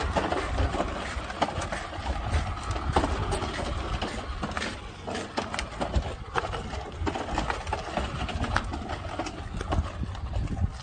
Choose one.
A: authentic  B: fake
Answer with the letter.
A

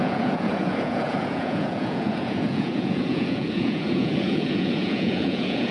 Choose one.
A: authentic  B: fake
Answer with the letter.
B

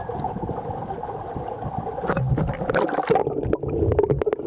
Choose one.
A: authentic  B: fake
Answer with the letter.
A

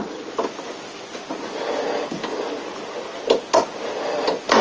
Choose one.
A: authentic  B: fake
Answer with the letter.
A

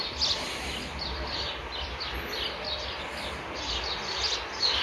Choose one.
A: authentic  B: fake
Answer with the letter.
A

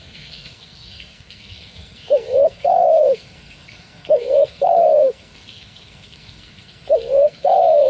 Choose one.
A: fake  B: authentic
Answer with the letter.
A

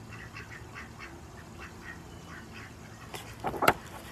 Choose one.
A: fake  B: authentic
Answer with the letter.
B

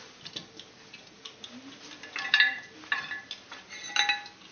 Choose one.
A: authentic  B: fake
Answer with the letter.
A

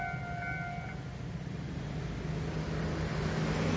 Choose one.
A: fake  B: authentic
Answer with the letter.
B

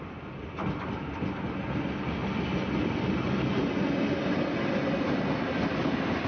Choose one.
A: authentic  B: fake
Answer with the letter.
A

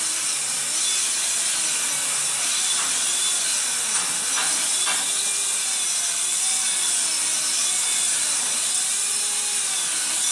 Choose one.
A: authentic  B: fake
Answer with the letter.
A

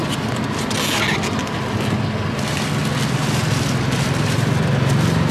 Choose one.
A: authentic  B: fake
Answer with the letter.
A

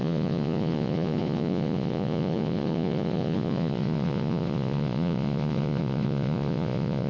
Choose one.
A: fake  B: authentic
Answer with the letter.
A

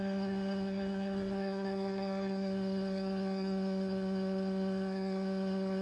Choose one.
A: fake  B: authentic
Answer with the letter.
A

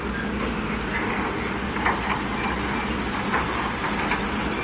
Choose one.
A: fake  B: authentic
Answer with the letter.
B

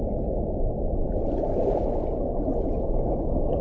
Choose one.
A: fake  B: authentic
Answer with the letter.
B